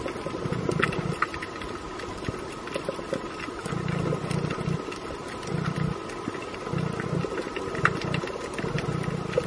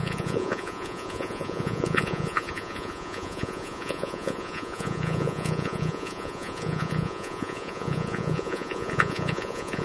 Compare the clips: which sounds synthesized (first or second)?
second